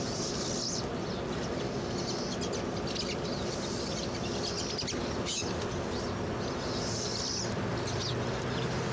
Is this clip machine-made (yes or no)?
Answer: no